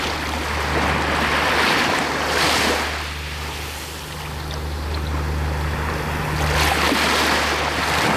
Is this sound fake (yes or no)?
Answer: no